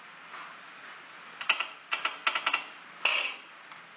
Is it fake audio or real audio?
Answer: real